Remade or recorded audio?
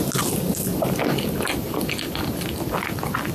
recorded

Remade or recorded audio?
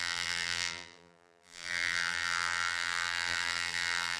remade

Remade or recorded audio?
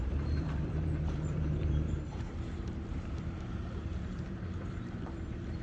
remade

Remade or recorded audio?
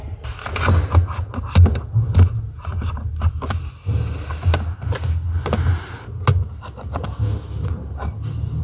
recorded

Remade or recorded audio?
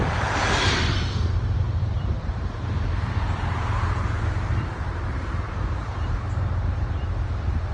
remade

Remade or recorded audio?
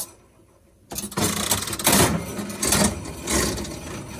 recorded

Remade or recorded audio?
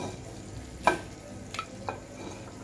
recorded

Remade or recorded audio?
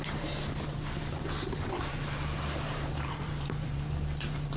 remade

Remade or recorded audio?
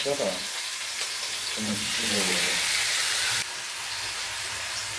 remade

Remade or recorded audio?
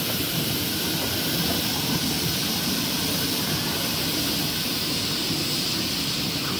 recorded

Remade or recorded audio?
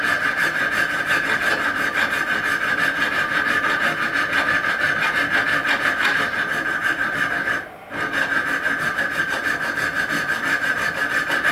remade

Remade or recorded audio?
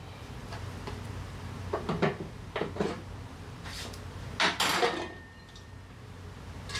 remade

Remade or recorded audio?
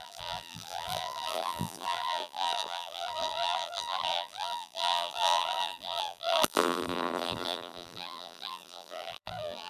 remade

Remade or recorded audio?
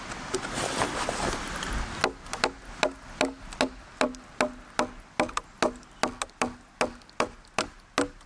recorded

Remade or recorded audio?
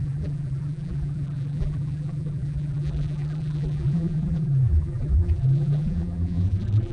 remade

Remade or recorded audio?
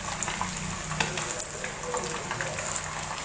recorded